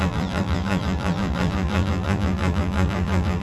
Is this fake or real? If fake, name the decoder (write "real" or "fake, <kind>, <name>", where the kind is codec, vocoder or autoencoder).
fake, vocoder, BigVGAN v2